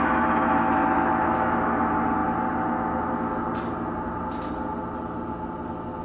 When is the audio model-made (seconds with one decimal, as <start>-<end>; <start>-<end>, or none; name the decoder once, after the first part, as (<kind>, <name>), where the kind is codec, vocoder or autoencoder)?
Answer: none